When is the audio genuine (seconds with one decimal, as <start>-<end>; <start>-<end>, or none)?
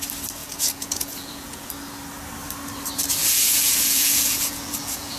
0.0-0.4; 1.7-3.2